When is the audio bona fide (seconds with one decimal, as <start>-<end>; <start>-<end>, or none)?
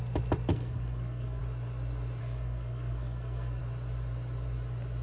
0.0-0.5; 1.4-2.2; 3.6-5.0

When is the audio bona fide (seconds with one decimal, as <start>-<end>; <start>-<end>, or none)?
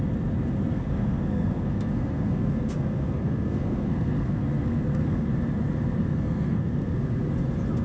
0.0-0.7; 5.3-6.0; 7.3-7.8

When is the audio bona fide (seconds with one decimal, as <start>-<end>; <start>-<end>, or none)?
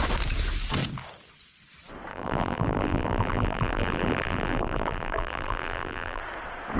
0.0-2.1; 6.2-6.8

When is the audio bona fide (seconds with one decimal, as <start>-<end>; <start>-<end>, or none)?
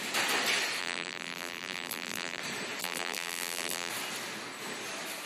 0.0-0.8; 2.4-2.8; 3.9-5.3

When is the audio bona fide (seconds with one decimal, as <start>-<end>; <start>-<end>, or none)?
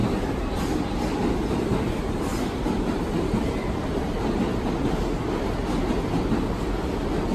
0.0-2.3; 4.2-7.3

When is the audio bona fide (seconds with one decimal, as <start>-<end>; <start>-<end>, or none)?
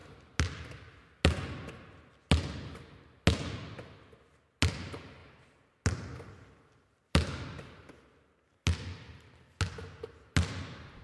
0.0-11.0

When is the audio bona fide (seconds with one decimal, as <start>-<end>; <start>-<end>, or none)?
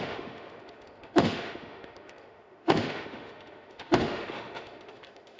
none